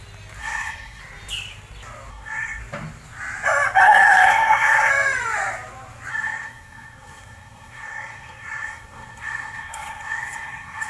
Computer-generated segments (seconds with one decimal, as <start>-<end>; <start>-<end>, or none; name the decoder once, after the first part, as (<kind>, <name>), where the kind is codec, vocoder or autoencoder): 0.4-1.0 (codec, SNAC); 2.1-2.6; 3.8-4.9; 6.1-10.9